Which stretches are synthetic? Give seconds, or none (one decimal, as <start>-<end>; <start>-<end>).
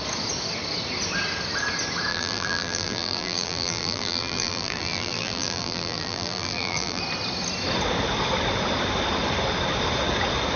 2.1-7.0